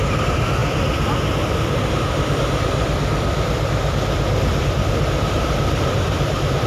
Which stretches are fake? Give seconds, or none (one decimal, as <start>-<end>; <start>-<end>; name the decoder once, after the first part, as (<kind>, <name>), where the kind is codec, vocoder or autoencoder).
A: 0.0-0.6 (vocoder, BigVGAN v2); 4.6-6.7